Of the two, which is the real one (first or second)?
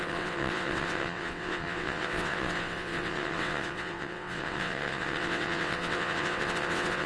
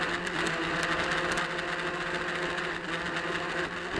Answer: second